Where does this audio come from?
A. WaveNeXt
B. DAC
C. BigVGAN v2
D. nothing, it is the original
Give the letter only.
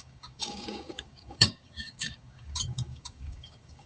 B